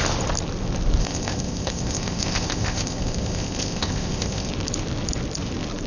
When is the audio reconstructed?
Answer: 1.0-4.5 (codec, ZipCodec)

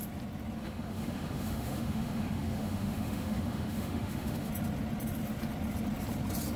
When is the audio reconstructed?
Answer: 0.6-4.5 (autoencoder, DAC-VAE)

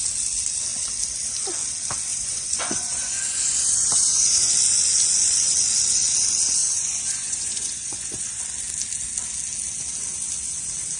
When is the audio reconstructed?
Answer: 2.1-4.5 (vocoder, Vocos); 6.6-8.4

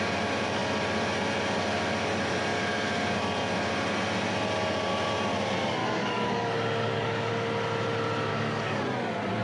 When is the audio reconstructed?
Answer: 5.8-7.3 (codec, DAC); 8.3-8.8